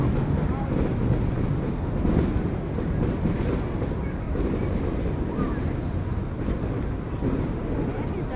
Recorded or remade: recorded